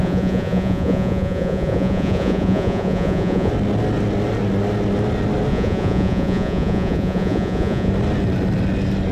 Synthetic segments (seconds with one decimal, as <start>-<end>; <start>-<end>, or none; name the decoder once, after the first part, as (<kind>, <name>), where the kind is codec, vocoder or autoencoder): 0.0-3.5 (vocoder, Vocos); 5.5-7.9